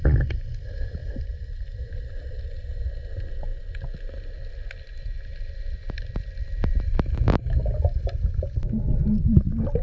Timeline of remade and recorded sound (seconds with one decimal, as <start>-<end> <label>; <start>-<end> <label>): 0.0-1.0 recorded; 1.0-2.8 remade; 2.8-9.8 recorded